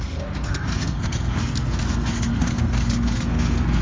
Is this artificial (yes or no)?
yes